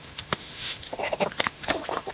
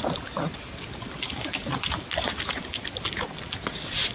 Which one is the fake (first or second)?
first